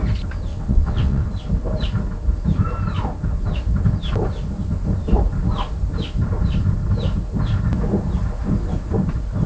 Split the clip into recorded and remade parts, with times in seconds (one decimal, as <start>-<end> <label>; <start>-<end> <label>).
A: 0.0-0.5 recorded; 0.5-1.3 remade; 1.3-9.5 recorded

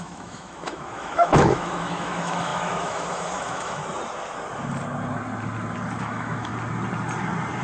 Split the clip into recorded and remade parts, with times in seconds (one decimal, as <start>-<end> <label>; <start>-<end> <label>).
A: 0.0-3.8 remade; 3.8-6.0 recorded; 6.0-6.5 remade; 6.5-7.6 recorded

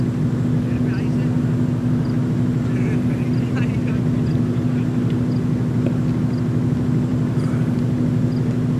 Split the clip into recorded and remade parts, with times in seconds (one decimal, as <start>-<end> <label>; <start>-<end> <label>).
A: 0.0-8.8 recorded

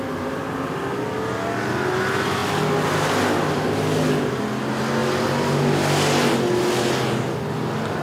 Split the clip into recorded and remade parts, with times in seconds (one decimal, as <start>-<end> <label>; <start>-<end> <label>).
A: 0.0-8.0 recorded

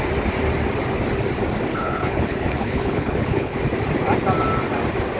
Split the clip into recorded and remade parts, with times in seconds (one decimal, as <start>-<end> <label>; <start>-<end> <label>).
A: 0.0-1.7 recorded; 1.7-3.6 remade; 3.6-5.2 recorded